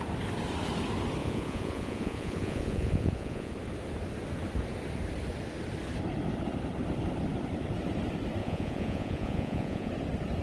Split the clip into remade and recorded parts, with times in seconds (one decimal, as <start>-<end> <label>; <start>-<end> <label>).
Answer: 0.0-1.2 recorded; 1.2-3.5 remade; 3.5-8.4 recorded; 8.4-9.9 remade; 9.9-10.4 recorded